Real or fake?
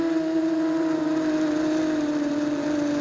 fake